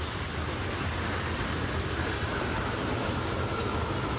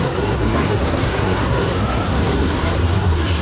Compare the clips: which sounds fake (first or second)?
second